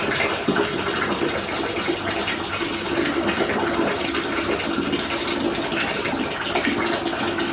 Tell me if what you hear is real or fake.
real